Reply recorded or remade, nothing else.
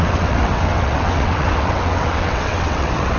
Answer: remade